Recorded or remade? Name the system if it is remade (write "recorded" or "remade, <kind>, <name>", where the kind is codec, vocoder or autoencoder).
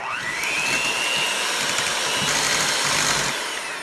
recorded